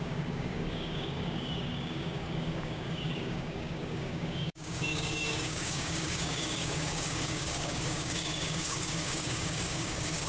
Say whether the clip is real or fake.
fake